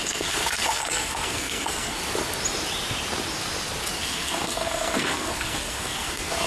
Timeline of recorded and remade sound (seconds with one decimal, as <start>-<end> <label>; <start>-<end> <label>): 0.0-2.0 remade; 2.0-4.0 recorded; 4.0-6.5 remade